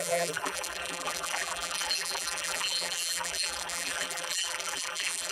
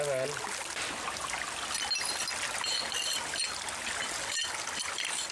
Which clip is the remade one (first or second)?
first